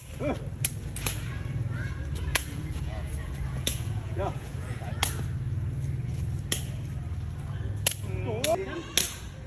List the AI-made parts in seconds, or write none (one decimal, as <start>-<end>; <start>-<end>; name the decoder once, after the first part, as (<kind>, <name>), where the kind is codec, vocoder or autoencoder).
2.3-4.9 (vocoder, Vocos)